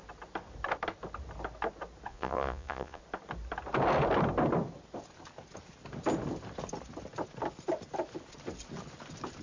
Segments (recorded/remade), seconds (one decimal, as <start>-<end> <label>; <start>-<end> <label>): 0.0-2.1 recorded; 2.1-3.0 remade; 3.0-9.4 recorded